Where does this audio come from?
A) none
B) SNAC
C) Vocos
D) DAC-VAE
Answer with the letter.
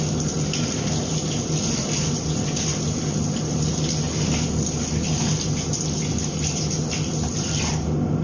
A